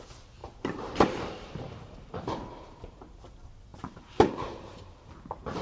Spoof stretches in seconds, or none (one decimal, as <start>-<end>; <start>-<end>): 0.4-3.2; 3.7-5.1